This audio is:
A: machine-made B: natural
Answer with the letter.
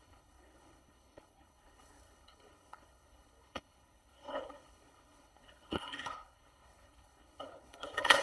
A